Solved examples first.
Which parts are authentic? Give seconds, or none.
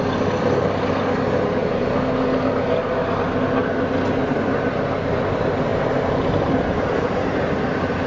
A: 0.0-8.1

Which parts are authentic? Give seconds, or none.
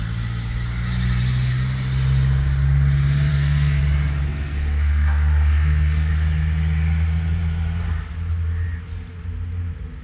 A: 0.0-3.3; 3.8-4.2; 6.1-10.0